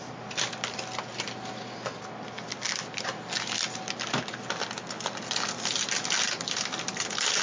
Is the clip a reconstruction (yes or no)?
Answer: no